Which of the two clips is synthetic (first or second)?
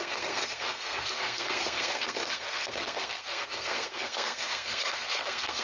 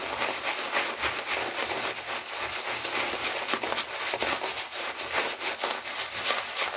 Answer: first